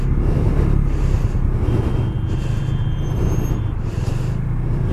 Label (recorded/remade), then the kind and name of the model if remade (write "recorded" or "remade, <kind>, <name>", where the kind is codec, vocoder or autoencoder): recorded